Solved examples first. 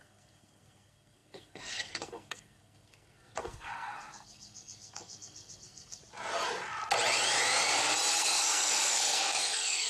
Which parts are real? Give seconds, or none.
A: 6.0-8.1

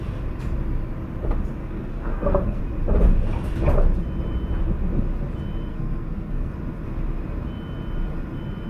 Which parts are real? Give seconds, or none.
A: 0.0-1.6; 2.6-5.7; 6.5-8.7

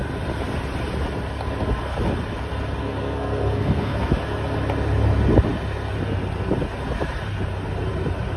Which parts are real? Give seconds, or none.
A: 0.0-2.8; 4.1-8.4

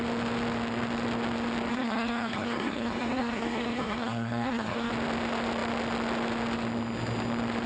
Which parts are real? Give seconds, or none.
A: 0.0-1.7; 4.9-7.7

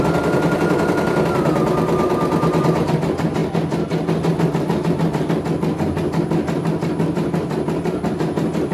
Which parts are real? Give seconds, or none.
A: 0.0-8.7

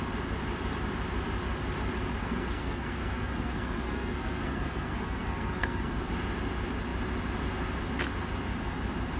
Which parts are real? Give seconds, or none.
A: 0.0-2.2; 6.1-9.2

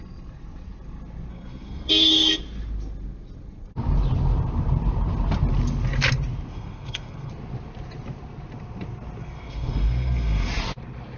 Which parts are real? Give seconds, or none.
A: 0.0-1.3; 2.4-6.5; 7.3-9.2; 10.5-11.2